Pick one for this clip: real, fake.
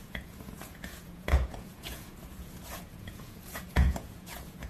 fake